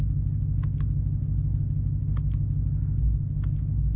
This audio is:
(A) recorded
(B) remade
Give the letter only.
A